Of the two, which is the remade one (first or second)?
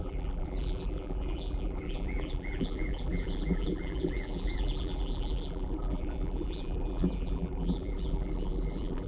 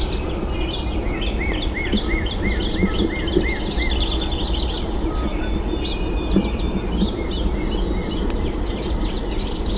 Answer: first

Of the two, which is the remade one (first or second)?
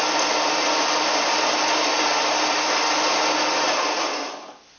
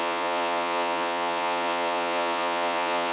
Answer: second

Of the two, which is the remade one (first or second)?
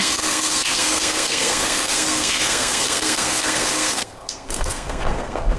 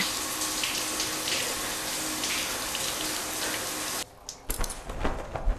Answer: first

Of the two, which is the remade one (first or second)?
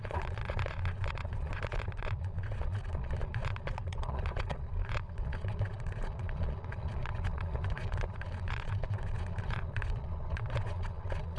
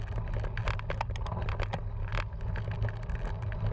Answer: first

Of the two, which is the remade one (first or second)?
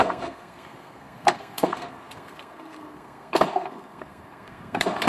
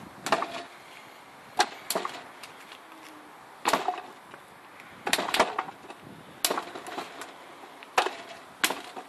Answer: first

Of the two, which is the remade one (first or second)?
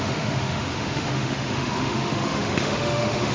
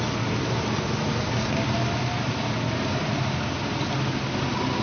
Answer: first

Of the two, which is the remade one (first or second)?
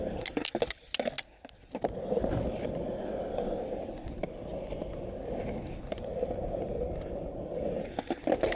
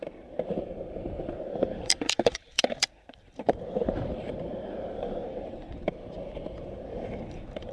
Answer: second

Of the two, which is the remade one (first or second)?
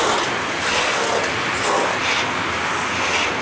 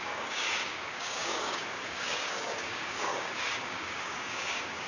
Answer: second